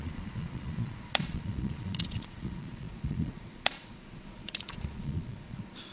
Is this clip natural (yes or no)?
no